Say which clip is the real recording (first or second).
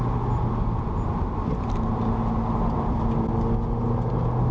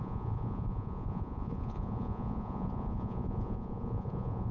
first